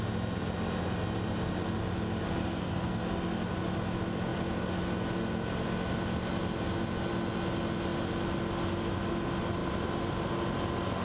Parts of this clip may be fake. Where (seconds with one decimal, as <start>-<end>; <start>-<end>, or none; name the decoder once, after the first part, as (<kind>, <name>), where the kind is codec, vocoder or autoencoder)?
2.4-3.0 (codec, SNAC)